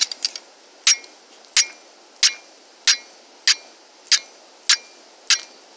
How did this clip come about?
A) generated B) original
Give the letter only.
B